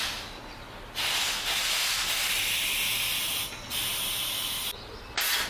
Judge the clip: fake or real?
real